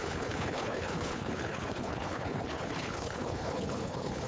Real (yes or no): no